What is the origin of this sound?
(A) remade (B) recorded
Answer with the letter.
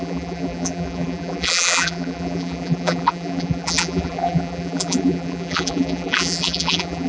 A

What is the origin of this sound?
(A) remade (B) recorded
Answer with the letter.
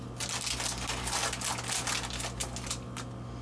B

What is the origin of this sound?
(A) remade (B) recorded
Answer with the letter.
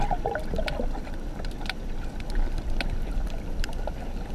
B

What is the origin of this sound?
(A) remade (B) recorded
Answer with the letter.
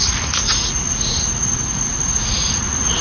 A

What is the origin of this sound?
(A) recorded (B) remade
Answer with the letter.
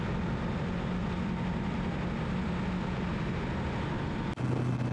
A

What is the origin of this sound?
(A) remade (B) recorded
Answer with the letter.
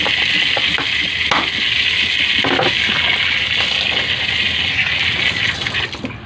B